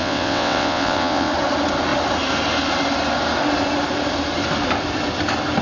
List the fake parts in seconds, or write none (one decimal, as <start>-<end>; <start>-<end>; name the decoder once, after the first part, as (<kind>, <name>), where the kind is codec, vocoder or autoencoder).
0.0-1.3 (vocoder, WaveNeXt)